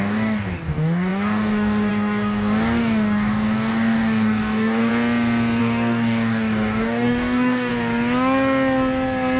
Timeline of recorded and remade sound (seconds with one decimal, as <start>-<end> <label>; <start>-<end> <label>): 0.0-4.9 remade; 4.9-5.6 recorded; 5.6-7.7 remade; 7.7-9.4 recorded